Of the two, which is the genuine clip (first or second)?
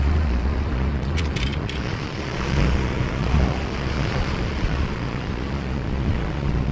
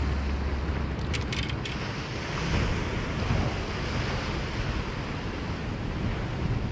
second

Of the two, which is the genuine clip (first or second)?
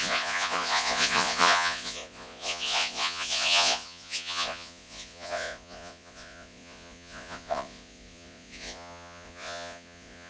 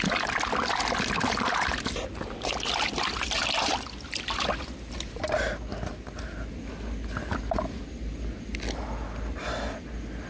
second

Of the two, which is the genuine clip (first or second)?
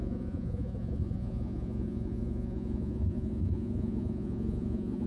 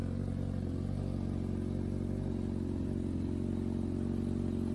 second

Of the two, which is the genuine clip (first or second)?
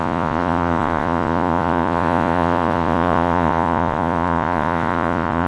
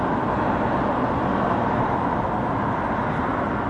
second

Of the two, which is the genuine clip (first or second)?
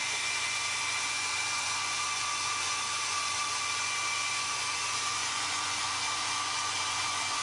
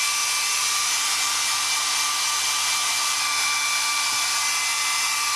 second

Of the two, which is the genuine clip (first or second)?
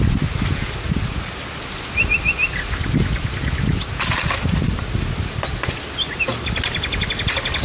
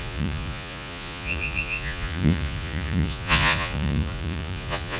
first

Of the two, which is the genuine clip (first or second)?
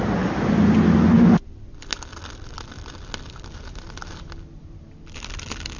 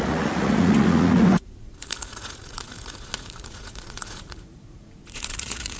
first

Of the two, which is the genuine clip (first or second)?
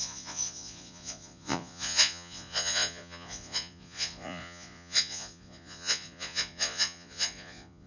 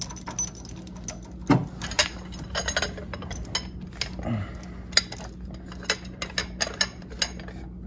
second